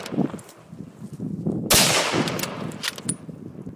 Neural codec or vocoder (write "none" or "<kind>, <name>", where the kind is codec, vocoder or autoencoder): none